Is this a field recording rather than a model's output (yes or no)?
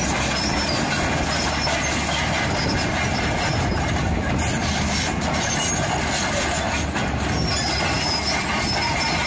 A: yes